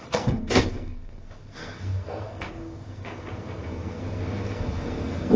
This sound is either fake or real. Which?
fake